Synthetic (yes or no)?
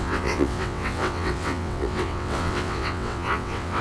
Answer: yes